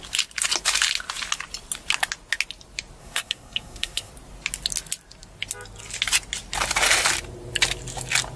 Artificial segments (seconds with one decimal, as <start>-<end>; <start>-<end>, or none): 3.0-4.1